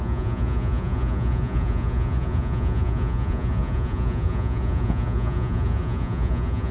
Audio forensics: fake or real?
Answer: fake